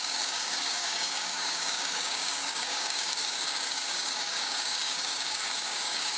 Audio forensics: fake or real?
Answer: fake